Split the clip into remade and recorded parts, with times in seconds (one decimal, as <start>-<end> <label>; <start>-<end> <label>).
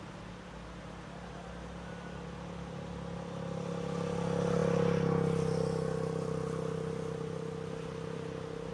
0.0-8.7 recorded